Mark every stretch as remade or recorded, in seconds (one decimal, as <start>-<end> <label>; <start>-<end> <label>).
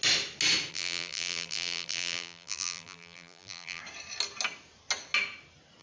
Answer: 0.0-0.7 recorded; 0.7-3.8 remade; 3.8-5.8 recorded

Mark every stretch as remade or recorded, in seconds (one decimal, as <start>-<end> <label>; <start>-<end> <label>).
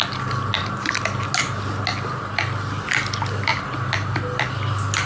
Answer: 0.0-5.1 recorded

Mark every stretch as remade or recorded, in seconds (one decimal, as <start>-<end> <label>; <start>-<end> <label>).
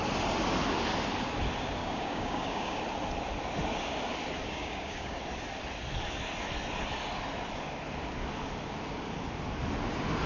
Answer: 0.0-1.8 recorded; 1.8-2.8 remade; 2.8-4.4 recorded; 4.4-5.2 remade; 5.2-10.3 recorded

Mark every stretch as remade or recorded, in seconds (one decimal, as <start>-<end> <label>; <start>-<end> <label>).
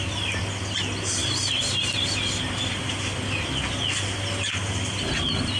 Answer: 0.0-5.6 recorded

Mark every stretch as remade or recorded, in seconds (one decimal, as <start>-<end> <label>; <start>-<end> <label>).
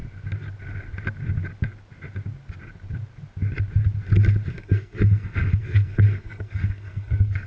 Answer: 0.0-4.5 recorded; 4.5-7.5 remade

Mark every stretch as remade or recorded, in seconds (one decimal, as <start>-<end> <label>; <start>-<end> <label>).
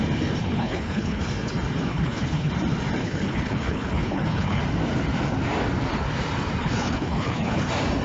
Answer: 0.0-0.4 recorded; 0.4-1.2 remade; 1.2-1.9 recorded; 1.9-2.5 remade; 2.5-3.0 recorded; 3.0-4.6 remade; 4.6-6.6 recorded; 6.6-7.6 remade; 7.6-8.0 recorded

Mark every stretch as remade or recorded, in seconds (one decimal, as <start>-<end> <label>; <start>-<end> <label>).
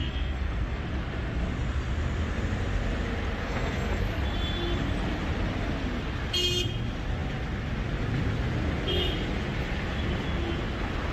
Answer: 0.0-0.8 remade; 0.8-3.4 recorded; 3.4-4.0 remade; 4.0-11.1 recorded